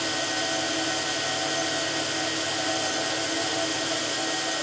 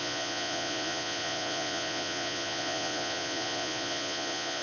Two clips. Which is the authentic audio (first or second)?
first